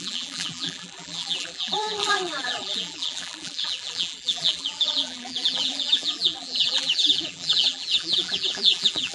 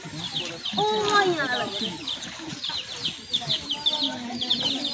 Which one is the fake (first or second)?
first